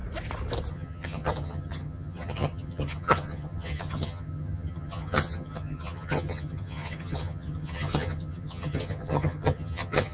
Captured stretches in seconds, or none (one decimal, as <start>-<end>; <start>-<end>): 0.0-0.7